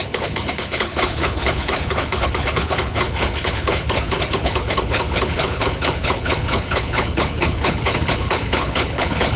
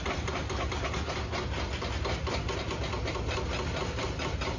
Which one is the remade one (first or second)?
first